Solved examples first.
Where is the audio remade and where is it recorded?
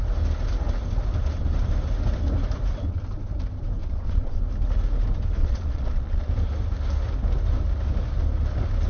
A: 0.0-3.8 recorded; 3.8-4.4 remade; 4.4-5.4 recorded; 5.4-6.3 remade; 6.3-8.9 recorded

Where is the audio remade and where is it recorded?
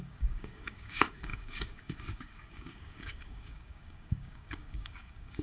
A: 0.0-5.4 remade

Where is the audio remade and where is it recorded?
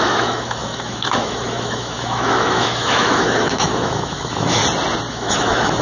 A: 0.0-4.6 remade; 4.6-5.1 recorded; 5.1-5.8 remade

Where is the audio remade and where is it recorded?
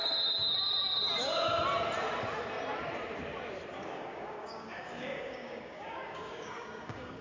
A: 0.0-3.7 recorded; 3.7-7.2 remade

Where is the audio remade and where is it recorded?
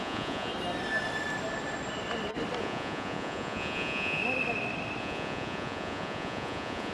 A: 0.0-0.5 remade; 0.5-2.6 recorded; 2.6-4.2 remade; 4.2-5.0 recorded; 5.0-6.9 remade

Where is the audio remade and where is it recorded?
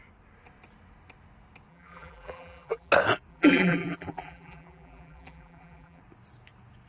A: 0.0-1.7 recorded; 1.7-2.9 remade; 2.9-3.3 recorded; 3.3-6.0 remade; 6.0-6.9 recorded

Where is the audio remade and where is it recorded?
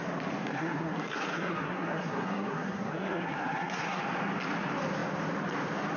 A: 0.0-0.4 recorded; 0.4-4.0 remade; 4.0-6.0 recorded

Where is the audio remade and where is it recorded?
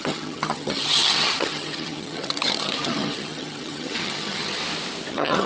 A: 0.0-4.6 remade; 4.6-5.1 recorded; 5.1-5.5 remade